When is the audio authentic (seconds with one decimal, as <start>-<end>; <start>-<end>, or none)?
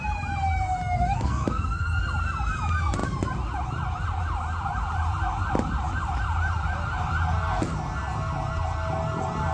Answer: 0.0-0.8; 2.0-9.5